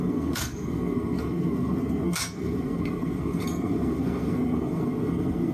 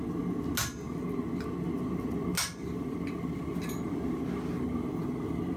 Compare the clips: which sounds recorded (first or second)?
second